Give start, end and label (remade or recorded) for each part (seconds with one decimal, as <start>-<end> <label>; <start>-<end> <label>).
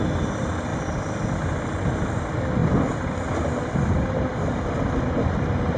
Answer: 0.0-5.8 recorded